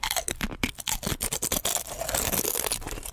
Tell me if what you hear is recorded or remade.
recorded